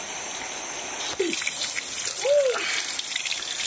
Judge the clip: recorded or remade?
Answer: recorded